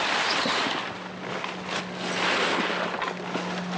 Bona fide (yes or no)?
yes